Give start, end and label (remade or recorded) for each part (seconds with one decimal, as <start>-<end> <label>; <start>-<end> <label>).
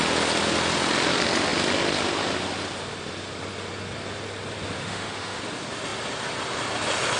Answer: 0.0-4.8 recorded; 4.8-5.4 remade; 5.4-7.2 recorded